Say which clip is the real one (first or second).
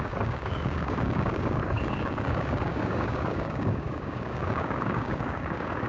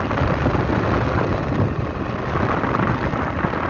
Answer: second